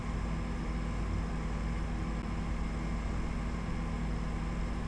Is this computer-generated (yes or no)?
no